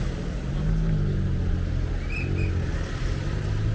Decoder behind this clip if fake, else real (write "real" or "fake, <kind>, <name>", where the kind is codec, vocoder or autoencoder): real